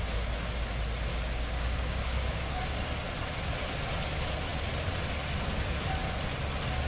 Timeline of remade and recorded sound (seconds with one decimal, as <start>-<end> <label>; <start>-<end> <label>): 0.0-1.1 recorded; 1.1-2.6 remade; 2.6-6.9 recorded